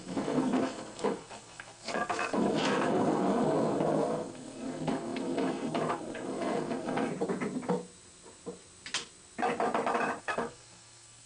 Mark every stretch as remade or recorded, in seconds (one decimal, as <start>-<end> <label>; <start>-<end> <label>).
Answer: 0.0-7.1 remade; 7.1-10.2 recorded; 10.2-11.3 remade